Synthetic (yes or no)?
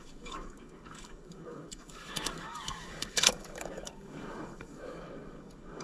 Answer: yes